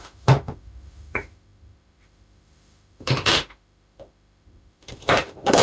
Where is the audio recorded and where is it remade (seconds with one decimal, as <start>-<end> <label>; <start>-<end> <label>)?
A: 0.0-5.6 remade